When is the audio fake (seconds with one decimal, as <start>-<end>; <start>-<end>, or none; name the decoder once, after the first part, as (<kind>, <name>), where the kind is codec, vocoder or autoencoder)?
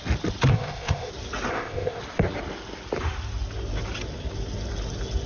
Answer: 0.5-1.1 (codec, ZipCodec); 1.5-2.0